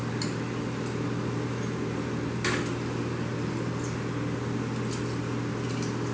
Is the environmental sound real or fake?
real